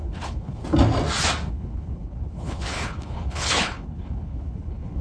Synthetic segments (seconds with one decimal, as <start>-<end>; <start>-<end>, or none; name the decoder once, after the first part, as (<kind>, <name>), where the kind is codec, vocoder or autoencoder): 0.0-0.6 (codec, HILCodec); 1.5-5.0